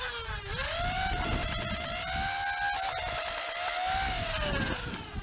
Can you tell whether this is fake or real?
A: real